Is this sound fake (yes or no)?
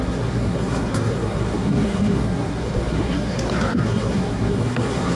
yes